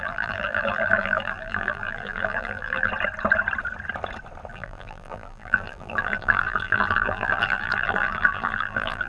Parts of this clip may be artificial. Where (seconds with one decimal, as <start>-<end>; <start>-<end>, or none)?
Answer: 0.0-2.9; 4.5-9.1